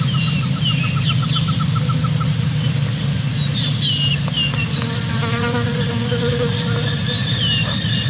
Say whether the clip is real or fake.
real